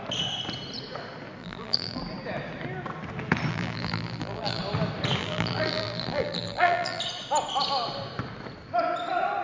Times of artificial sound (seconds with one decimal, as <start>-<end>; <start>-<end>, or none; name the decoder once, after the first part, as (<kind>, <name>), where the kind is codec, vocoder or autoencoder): 1.4-2.0 (vocoder, BigVGAN v2); 3.5-4.6; 5.2-7.0